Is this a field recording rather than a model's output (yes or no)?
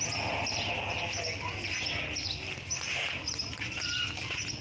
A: yes